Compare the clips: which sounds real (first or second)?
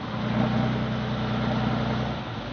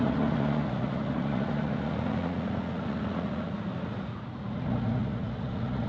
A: first